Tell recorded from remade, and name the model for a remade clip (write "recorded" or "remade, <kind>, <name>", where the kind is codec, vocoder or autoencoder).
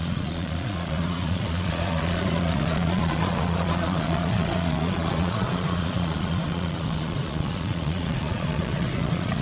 remade, vocoder, Vocos